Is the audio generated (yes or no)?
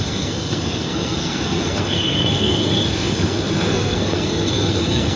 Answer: yes